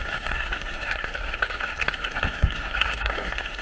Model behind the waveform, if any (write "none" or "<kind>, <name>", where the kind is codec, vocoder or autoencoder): codec, SNAC